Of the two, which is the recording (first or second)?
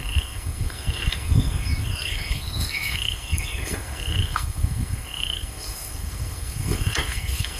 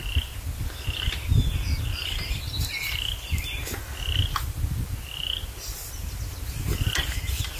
second